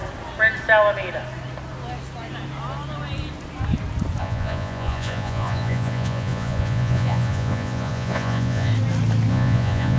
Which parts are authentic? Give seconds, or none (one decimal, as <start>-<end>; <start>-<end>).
0.0-4.2; 8.7-9.3

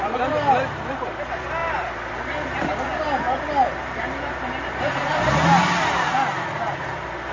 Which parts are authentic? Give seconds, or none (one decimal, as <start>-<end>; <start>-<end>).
0.0-7.3

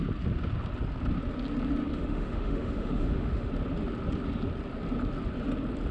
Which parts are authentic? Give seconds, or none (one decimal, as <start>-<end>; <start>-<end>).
0.0-1.9; 3.5-5.9

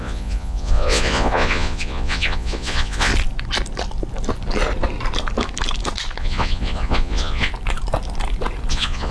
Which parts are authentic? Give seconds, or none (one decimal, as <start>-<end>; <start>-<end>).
3.1-6.2; 7.5-8.7

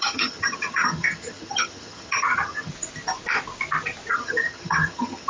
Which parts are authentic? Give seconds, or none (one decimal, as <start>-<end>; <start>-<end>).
2.7-4.1

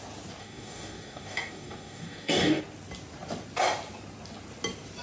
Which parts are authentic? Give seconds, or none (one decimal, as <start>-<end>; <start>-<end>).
0.0-0.4; 2.6-5.0

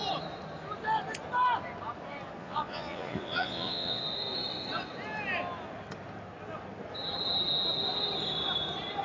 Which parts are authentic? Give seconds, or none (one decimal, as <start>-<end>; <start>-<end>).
0.0-2.4; 4.0-9.0

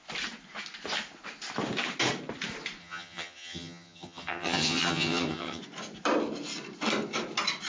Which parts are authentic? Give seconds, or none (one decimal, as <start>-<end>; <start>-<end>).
0.0-2.8; 5.6-7.7